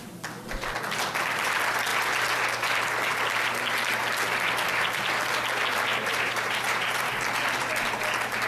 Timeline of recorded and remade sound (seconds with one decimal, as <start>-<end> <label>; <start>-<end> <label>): 0.0-5.9 recorded; 5.9-7.1 remade; 7.1-8.5 recorded